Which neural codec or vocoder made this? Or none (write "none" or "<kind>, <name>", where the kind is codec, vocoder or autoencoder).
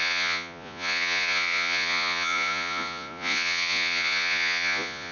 vocoder, Vocos